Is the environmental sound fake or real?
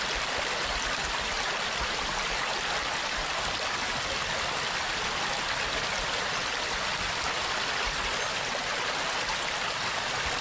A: real